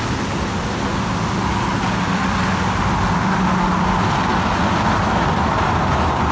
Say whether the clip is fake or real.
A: real